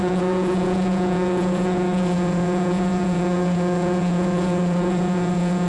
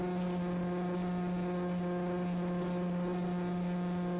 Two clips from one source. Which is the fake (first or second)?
first